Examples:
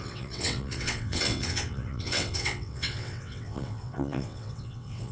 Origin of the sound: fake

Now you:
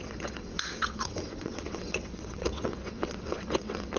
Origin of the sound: fake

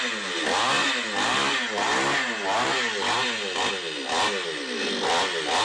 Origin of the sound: real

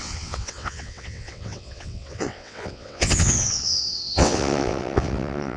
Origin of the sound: fake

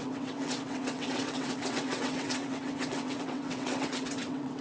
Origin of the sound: fake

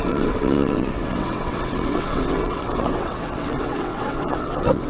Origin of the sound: fake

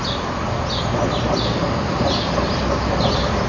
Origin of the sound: real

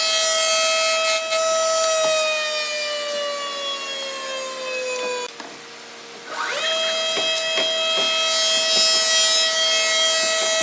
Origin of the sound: real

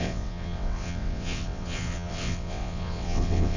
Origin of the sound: fake